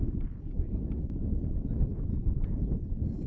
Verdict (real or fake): fake